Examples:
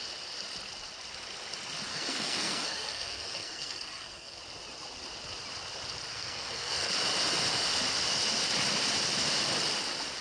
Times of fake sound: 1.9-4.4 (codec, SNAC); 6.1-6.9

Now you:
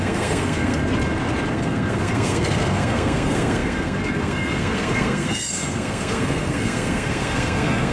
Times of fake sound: 0.0-0.8 (codec, SNAC); 1.5-7.9

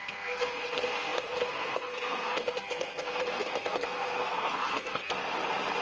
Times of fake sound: 0.0-5.0 (codec, SNAC)